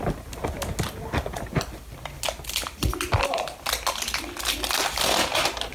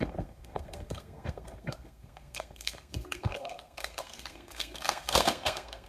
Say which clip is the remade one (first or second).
second